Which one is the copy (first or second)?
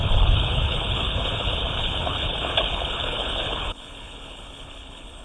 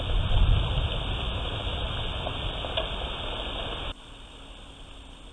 first